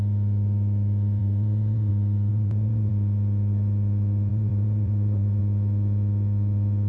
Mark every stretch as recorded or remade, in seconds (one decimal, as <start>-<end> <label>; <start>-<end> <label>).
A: 0.0-1.2 recorded; 1.2-1.9 remade; 1.9-2.3 recorded; 2.3-2.9 remade; 2.9-4.3 recorded; 4.3-5.4 remade; 5.4-6.9 recorded